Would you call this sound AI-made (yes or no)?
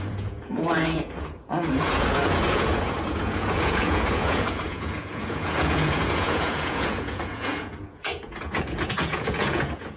yes